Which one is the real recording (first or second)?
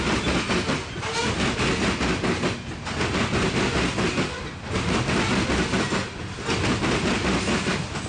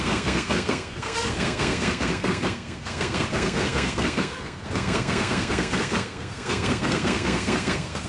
first